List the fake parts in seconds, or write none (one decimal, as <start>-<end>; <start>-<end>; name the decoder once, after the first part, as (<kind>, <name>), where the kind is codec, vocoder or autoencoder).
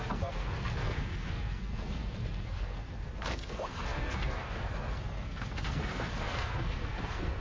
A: 0.0-7.4 (codec, SNAC)